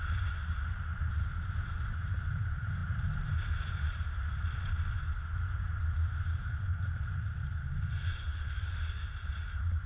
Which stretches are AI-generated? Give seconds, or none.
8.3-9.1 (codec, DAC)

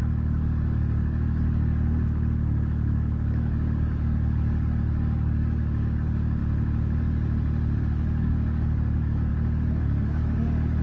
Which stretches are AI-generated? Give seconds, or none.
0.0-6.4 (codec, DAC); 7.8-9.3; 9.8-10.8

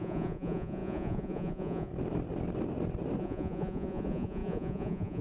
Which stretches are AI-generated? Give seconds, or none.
0.0-1.9 (vocoder, Vocos); 3.2-5.2

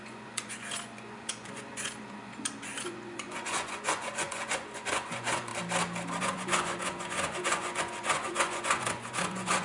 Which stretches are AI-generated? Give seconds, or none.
0.0-5.5 (vocoder, Vocos); 6.2-9.6